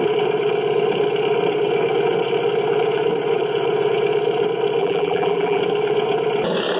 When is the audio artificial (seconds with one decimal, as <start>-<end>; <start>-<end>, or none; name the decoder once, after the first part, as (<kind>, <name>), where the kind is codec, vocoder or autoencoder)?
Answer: 4.8-5.6 (vocoder, BigVGAN v2)